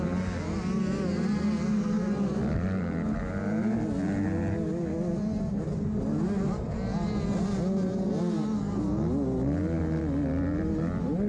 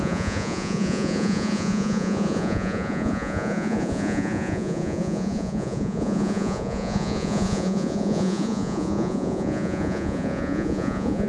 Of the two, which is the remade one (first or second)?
second